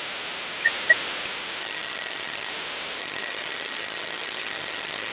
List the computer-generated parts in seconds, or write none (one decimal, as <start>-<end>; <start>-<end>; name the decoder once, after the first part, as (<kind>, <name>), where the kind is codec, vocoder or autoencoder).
1.6-2.5 (vocoder, HiFi-GAN); 3.0-5.1